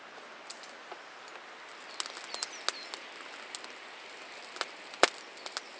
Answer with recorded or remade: recorded